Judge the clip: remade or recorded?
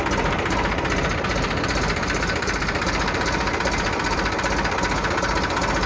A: remade